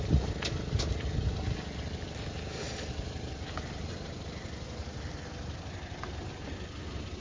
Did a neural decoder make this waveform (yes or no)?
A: no